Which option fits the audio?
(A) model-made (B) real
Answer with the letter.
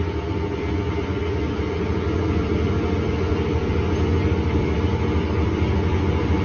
A